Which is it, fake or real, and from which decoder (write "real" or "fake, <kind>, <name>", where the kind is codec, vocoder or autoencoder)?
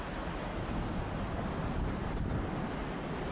real